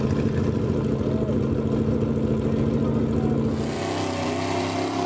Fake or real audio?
real